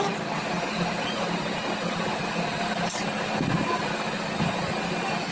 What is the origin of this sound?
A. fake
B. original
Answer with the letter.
B